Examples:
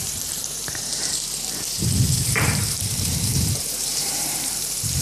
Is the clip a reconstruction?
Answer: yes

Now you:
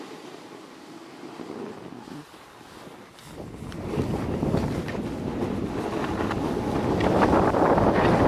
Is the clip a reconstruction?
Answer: no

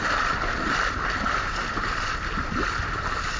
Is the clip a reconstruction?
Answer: yes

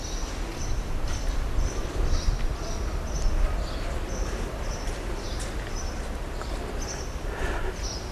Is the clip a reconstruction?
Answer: no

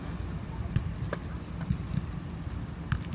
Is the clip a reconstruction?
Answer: no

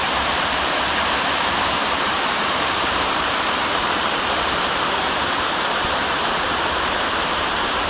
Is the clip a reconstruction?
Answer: yes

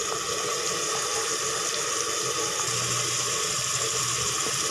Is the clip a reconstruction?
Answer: no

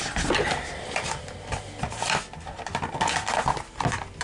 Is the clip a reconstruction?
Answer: no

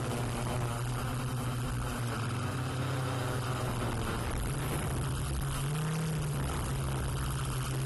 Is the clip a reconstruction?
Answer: no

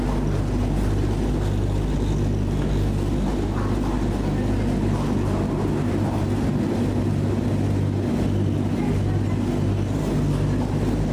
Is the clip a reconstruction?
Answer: no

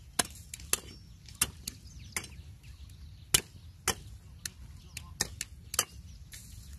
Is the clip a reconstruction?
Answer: no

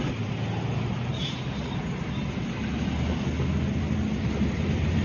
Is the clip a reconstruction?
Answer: no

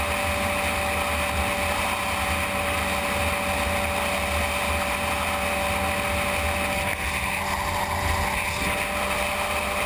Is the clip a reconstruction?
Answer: no